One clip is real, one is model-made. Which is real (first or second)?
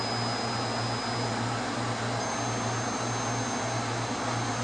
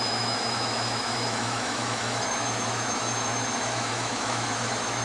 first